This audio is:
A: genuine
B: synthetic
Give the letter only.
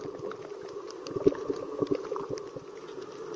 A